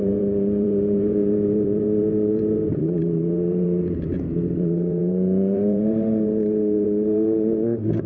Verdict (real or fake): fake